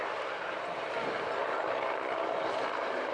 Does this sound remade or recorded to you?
recorded